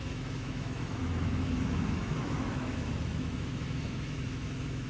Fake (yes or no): yes